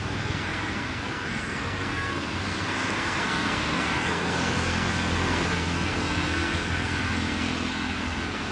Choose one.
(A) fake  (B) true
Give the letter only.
A